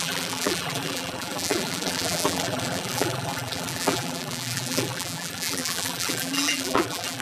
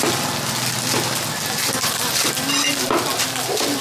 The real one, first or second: second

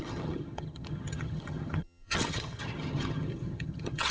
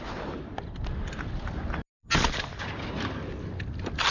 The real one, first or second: second